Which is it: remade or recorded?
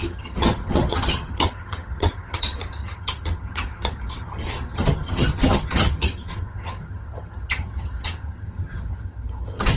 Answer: remade